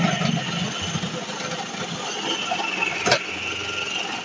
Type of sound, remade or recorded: recorded